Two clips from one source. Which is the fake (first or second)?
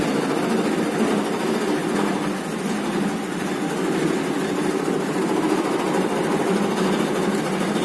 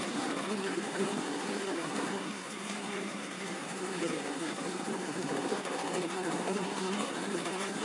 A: second